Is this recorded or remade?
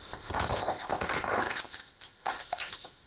remade